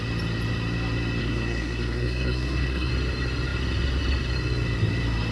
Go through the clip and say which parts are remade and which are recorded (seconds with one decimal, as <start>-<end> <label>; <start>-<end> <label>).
0.0-1.2 recorded; 1.2-2.9 remade; 2.9-5.3 recorded